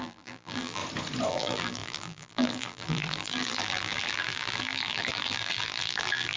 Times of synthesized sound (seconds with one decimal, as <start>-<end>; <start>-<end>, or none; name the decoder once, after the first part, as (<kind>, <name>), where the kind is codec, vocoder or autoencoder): 0.0-0.8 (vocoder, BigVGAN v2); 1.3-6.4